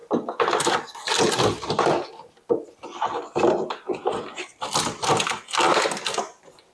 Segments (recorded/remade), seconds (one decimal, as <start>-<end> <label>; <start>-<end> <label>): 0.0-6.7 recorded